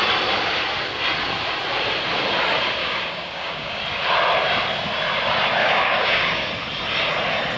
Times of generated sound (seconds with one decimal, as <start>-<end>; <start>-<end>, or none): 2.8-3.8; 5.6-6.5